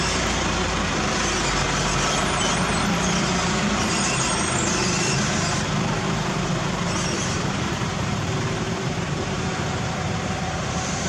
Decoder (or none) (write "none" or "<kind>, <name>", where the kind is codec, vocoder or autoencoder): vocoder, BigVGAN v2